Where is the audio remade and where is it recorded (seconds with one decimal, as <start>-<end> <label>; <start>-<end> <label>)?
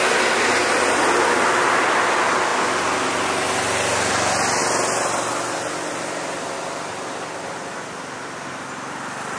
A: 0.0-9.4 recorded